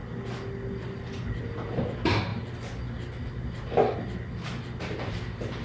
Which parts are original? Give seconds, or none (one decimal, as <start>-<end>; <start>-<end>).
0.0-5.6